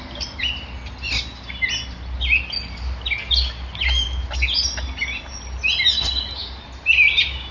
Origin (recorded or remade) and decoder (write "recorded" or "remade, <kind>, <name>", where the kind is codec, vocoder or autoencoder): recorded